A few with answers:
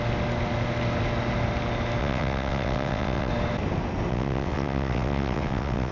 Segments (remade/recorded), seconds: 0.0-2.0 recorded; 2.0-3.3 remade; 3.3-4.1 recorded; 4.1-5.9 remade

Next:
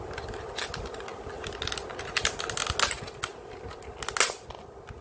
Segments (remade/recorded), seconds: 0.0-5.0 recorded

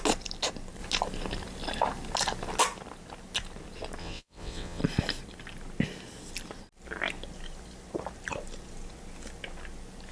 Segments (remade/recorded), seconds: 0.0-4.0 recorded; 4.0-4.8 remade; 4.8-10.1 recorded

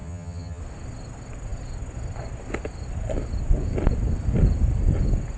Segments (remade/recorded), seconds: 0.0-0.6 remade; 0.6-5.4 recorded